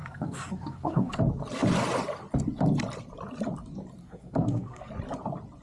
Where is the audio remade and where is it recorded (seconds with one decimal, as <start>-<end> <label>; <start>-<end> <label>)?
0.0-1.2 remade; 1.2-4.0 recorded; 4.0-4.9 remade; 4.9-5.6 recorded